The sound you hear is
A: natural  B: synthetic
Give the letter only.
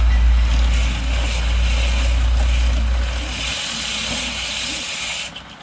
A